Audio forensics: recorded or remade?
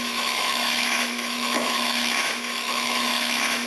remade